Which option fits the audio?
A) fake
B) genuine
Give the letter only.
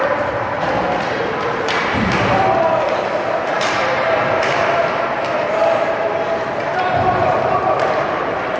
A